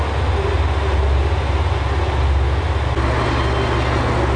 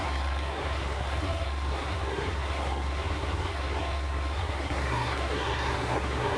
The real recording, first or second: first